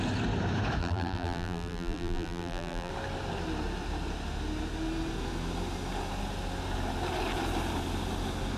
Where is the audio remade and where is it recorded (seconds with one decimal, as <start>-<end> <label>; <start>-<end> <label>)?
0.0-0.8 recorded; 0.8-2.9 remade; 2.9-8.6 recorded